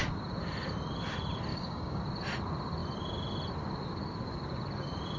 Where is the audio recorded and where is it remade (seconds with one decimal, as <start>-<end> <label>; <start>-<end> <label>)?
0.0-1.5 recorded; 1.5-2.0 remade; 2.0-5.2 recorded